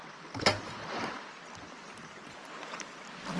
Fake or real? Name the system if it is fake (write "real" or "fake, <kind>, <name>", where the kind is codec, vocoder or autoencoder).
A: real